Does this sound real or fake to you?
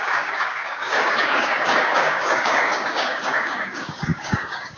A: fake